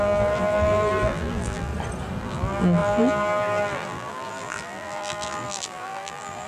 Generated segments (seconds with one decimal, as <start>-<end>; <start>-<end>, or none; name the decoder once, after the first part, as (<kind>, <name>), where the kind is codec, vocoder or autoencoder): 0.0-1.7 (vocoder, BigVGAN v2); 2.2-6.5